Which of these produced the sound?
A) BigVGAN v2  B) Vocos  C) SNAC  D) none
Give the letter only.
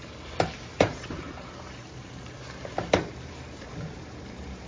A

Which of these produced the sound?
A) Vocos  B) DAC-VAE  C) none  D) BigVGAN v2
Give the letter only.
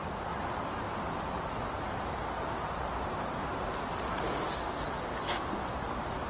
C